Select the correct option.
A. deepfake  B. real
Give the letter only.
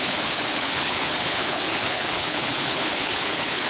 A